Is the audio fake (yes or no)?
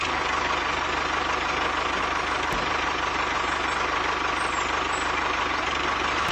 no